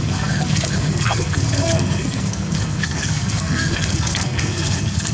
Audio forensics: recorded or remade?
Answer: remade